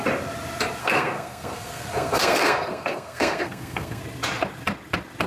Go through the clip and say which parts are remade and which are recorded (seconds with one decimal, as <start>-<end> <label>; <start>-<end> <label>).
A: 0.0-0.8 recorded; 0.8-4.0 remade; 4.0-5.3 recorded

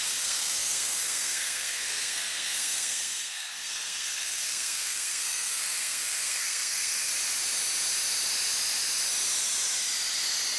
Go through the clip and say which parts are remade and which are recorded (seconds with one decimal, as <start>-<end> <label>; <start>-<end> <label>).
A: 0.0-7.1 remade; 7.1-10.6 recorded

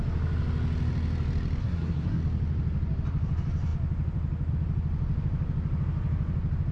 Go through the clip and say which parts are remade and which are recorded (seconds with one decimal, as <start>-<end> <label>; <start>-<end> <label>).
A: 0.0-1.6 recorded; 1.6-2.2 remade; 2.2-6.7 recorded

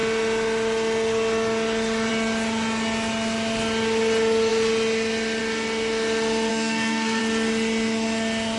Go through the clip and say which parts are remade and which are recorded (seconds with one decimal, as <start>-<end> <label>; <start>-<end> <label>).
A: 0.0-6.5 recorded; 6.5-7.2 remade; 7.2-8.6 recorded

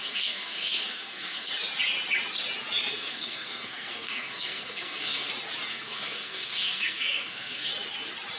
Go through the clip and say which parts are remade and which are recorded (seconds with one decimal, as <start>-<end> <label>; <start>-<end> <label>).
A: 0.0-1.5 remade; 1.5-2.9 recorded; 2.9-5.3 remade; 5.3-5.7 recorded; 5.7-7.7 remade; 7.7-8.4 recorded